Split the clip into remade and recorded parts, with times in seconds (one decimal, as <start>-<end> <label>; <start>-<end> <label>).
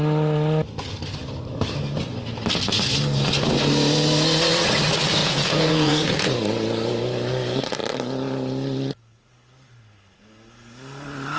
0.0-5.2 recorded; 5.2-6.3 remade; 6.3-11.4 recorded